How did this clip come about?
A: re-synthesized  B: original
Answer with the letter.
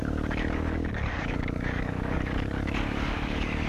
A